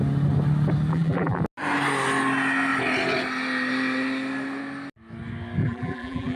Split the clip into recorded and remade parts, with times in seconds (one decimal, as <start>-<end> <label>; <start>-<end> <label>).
0.0-0.9 recorded; 0.9-1.4 remade; 1.4-5.6 recorded; 5.6-6.4 remade